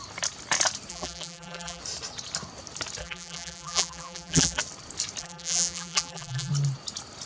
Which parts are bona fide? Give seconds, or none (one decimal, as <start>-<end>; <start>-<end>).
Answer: 0.0-0.9; 1.8-3.0; 4.6-5.2; 6.5-7.3